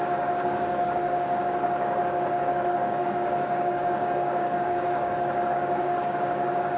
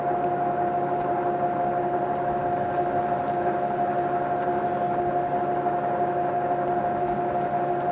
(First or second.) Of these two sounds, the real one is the second